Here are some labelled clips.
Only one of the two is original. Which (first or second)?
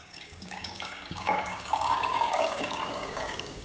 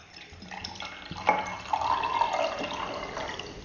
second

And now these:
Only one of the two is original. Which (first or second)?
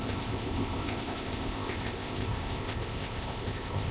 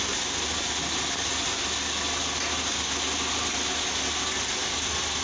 second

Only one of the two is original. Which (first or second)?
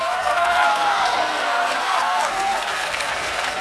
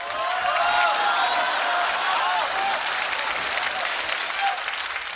second